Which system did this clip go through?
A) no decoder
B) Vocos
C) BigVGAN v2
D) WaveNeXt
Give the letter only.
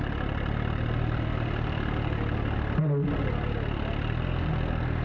C